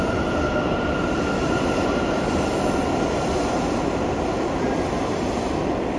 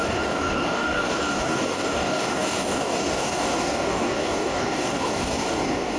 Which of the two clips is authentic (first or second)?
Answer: first